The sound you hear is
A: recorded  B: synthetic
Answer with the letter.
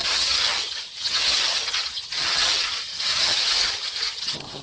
B